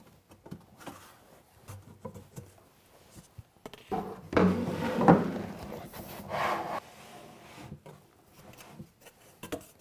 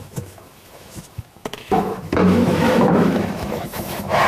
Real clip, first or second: first